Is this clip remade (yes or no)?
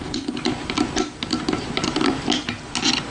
no